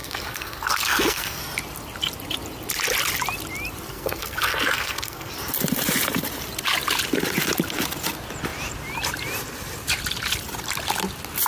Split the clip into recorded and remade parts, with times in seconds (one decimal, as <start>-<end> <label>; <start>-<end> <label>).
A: 0.0-1.4 remade; 1.4-3.9 recorded; 3.9-5.3 remade; 5.3-11.5 recorded